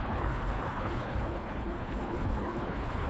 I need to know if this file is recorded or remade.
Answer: remade